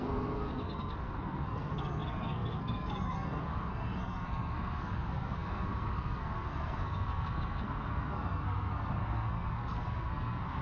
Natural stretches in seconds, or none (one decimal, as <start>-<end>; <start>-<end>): none